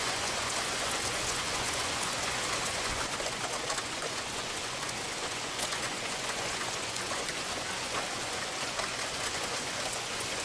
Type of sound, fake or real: fake